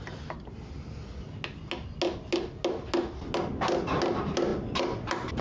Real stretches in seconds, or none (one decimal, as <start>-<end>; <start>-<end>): 0.0-5.4